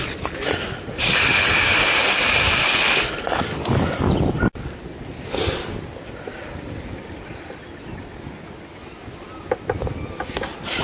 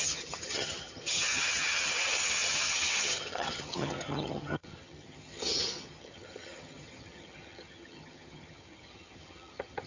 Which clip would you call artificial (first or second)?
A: second